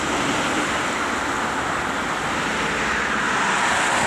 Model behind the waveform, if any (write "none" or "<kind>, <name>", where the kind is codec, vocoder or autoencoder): none